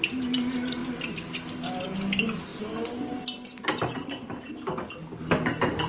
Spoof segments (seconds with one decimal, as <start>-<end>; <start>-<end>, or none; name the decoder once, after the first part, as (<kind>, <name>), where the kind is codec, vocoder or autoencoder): none